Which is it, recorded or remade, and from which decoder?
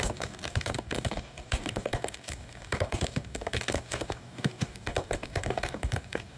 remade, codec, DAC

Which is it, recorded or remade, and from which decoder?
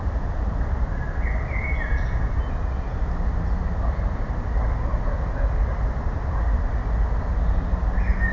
recorded